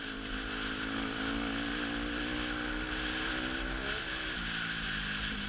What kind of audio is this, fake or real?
real